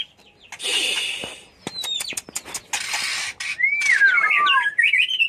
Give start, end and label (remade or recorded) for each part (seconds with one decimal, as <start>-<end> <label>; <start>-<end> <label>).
0.0-5.3 recorded